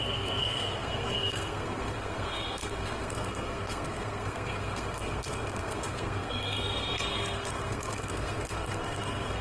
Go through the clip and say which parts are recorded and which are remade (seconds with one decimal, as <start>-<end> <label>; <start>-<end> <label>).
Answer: 0.0-9.4 remade